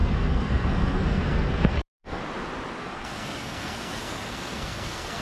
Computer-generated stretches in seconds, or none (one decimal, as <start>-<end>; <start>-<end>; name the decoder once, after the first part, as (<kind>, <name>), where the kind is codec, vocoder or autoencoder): 0.0-2.2 (codec, SNAC); 2.8-5.2